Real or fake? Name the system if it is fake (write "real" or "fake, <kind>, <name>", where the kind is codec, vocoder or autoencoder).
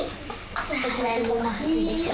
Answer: real